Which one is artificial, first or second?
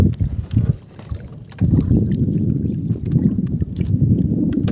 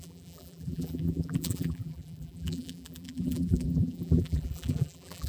second